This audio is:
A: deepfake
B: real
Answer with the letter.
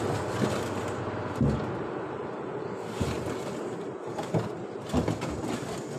B